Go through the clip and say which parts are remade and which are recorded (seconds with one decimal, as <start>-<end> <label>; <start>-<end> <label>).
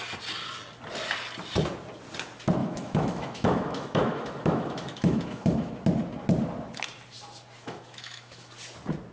0.0-2.6 recorded; 2.6-5.7 remade; 5.7-7.6 recorded; 7.6-8.5 remade; 8.5-9.1 recorded